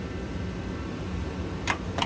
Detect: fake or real real